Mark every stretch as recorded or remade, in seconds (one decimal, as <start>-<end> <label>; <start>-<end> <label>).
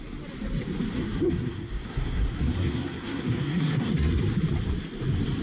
0.0-1.0 recorded; 1.0-4.2 remade; 4.2-5.4 recorded